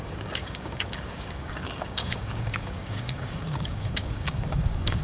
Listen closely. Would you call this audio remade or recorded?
remade